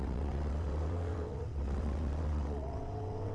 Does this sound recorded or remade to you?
remade